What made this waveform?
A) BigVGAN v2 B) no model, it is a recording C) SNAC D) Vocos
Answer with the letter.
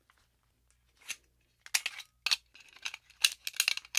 B